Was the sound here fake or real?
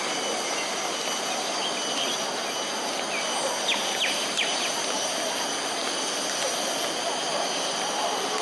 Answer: real